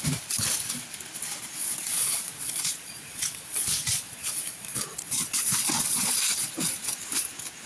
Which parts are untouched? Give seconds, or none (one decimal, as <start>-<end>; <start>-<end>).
0.0-1.6; 6.2-7.7